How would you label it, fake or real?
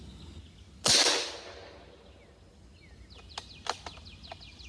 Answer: real